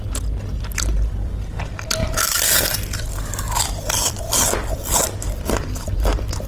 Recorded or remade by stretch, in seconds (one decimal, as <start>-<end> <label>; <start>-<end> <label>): 0.0-0.5 recorded; 0.5-1.6 remade; 1.6-2.0 recorded; 2.0-5.9 remade; 5.9-6.5 recorded